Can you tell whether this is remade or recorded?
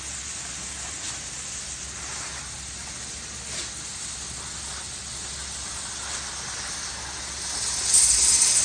recorded